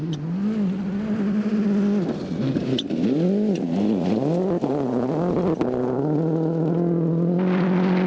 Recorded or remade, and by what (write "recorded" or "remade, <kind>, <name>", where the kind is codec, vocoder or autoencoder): recorded